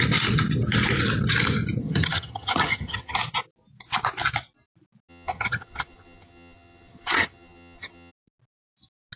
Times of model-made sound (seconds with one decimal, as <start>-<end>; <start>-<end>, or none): 1.8-3.2; 5.1-8.1